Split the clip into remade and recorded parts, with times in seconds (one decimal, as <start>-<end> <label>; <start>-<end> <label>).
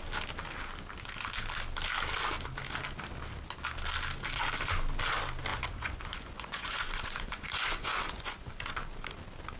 0.0-5.5 recorded; 5.5-8.5 remade; 8.5-9.6 recorded